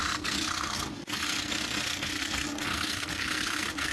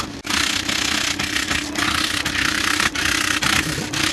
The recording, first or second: second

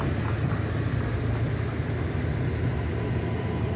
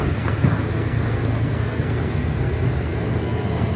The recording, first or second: first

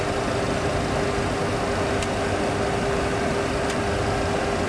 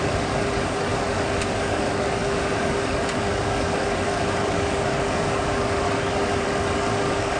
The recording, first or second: first